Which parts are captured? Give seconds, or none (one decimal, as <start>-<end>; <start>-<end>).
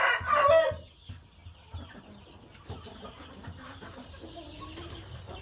none